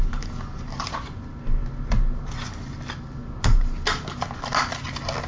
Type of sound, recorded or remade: recorded